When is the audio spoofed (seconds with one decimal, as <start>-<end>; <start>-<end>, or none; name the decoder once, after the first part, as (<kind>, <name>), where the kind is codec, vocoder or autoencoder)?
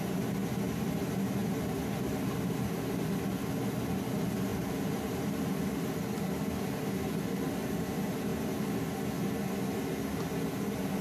4.5-6.9 (vocoder, BigVGAN v2)